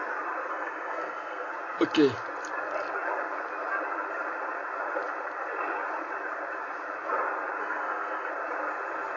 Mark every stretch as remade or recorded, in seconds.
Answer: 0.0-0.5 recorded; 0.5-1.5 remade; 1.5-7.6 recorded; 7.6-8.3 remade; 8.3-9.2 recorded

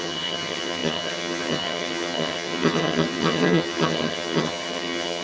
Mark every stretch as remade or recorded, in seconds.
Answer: 0.0-5.2 remade

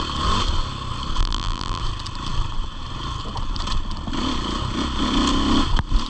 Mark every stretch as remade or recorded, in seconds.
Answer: 0.0-1.2 recorded; 1.2-1.8 remade; 1.8-6.1 recorded

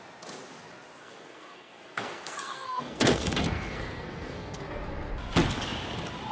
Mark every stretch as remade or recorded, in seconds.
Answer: 0.0-1.0 recorded; 1.0-4.8 remade; 4.8-6.3 recorded

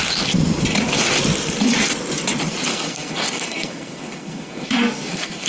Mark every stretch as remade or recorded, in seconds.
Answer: 0.0-2.7 recorded; 2.7-5.5 remade

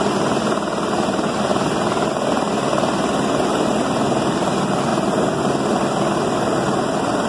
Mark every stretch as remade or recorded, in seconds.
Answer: 0.0-7.3 recorded

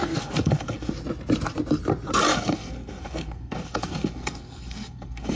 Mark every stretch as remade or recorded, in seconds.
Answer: 0.0-0.9 remade; 0.9-2.3 recorded; 2.3-5.4 remade